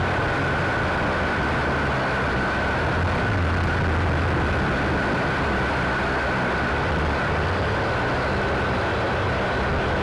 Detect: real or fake real